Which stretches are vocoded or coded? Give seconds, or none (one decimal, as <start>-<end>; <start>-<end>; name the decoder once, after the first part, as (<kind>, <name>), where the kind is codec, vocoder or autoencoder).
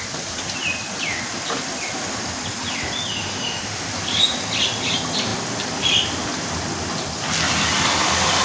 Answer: 3.1-3.9 (autoencoder, DAC-VAE)